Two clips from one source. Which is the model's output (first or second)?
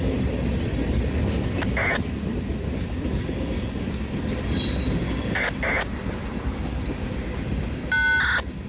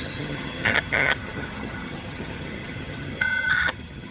second